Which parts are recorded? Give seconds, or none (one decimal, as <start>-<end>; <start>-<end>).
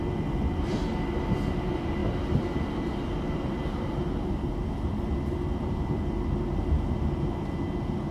0.0-2.0; 6.2-8.1